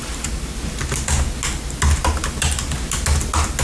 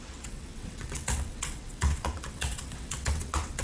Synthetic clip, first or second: second